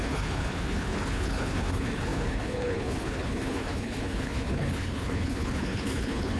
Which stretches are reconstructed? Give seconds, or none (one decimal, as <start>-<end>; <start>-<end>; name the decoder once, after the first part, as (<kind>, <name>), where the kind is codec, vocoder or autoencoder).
0.0-6.4 (codec, HILCodec)